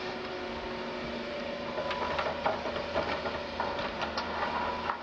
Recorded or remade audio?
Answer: recorded